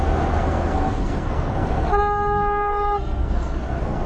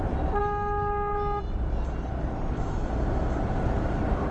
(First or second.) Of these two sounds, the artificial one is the first